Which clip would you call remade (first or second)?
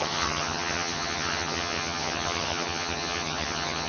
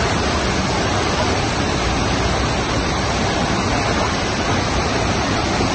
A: first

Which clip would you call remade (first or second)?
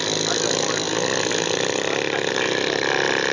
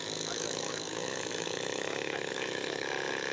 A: second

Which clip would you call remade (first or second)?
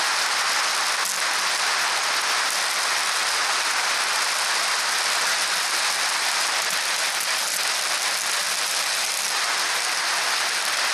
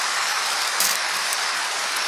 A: second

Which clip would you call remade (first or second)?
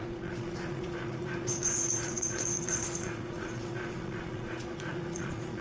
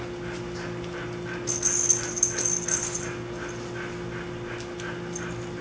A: first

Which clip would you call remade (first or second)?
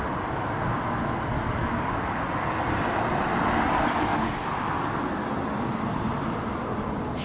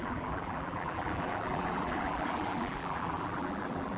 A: second